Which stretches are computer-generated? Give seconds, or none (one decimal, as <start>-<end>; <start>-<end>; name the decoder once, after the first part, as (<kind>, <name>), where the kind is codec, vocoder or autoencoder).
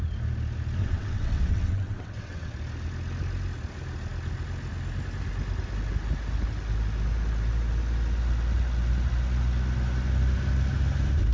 0.8-2.5 (vocoder, WaveNeXt)